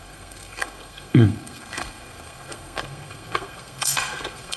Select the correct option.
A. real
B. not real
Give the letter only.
B